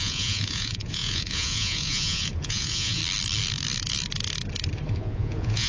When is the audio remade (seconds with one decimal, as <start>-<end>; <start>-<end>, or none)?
0.0-3.0; 4.9-5.7